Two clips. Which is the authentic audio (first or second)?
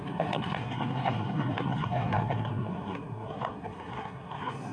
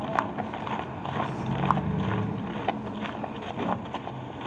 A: second